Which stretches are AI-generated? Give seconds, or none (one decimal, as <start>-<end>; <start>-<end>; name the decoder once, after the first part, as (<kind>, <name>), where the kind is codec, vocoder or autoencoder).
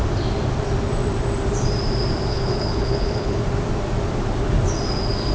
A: 2.3-3.4 (codec, HILCodec)